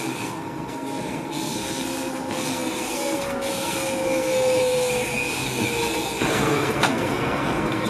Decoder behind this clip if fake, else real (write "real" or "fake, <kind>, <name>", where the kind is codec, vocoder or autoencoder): fake, codec, SNAC